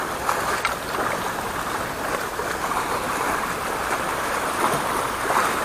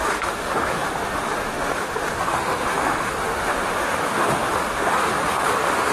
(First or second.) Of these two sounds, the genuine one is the first